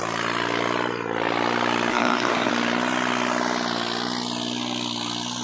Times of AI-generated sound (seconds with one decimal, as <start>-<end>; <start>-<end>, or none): 1.9-2.5

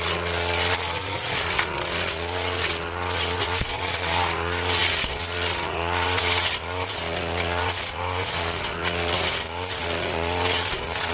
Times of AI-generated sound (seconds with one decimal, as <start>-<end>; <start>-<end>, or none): 0.0-11.1